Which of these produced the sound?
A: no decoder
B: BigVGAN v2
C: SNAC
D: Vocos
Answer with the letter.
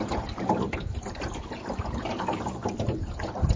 A